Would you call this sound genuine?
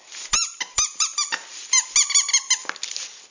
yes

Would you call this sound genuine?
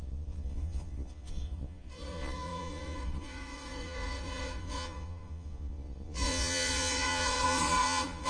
no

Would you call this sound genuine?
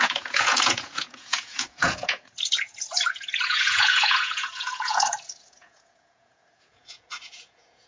no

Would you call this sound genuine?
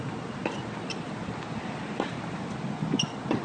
yes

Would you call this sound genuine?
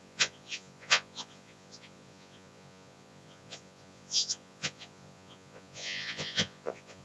no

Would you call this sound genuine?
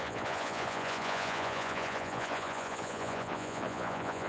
no